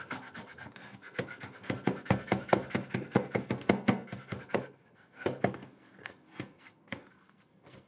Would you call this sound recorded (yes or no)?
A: no